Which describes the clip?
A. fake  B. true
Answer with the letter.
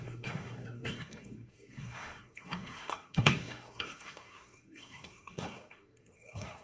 A